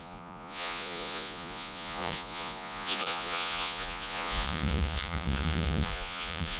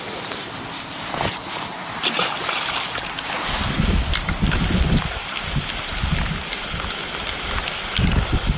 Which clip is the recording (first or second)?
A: second